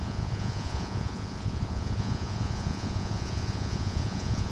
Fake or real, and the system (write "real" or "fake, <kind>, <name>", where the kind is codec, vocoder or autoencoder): fake, vocoder, Vocos